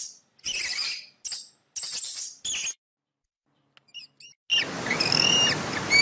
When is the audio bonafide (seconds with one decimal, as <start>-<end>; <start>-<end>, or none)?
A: 0.0-6.0